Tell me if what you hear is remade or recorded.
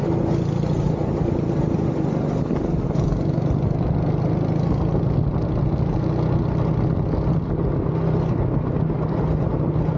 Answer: recorded